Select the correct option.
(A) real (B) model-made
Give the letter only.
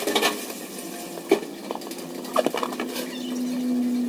A